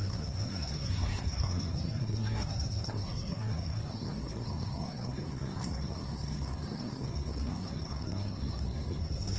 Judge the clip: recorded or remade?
remade